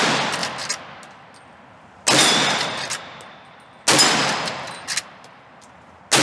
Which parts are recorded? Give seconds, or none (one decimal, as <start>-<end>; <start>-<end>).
0.0-6.2